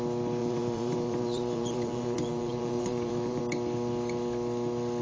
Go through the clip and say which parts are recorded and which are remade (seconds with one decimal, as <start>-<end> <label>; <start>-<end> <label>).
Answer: 0.0-0.4 recorded; 0.4-3.4 remade; 3.4-5.0 recorded